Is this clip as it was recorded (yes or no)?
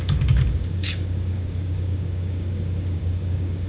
no